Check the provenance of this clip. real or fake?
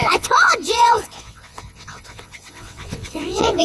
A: fake